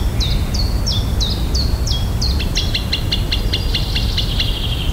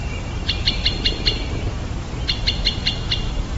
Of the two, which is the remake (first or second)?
second